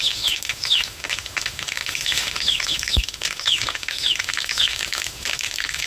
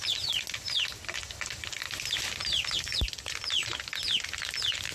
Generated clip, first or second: first